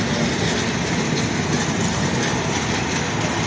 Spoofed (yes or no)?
no